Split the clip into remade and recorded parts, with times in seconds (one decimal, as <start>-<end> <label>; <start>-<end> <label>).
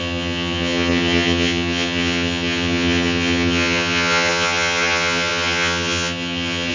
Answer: 0.0-6.7 remade